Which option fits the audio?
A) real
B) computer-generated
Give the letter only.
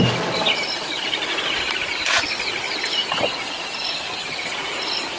A